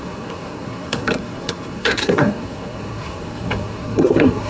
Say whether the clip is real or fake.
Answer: fake